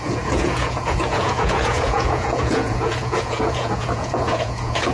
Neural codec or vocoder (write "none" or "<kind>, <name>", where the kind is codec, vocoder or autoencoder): vocoder, Vocos